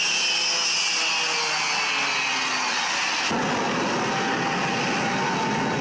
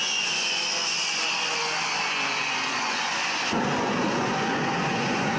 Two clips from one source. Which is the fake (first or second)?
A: second